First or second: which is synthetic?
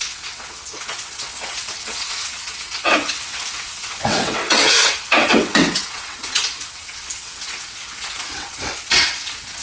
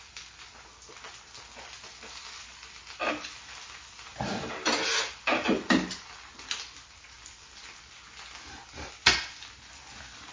first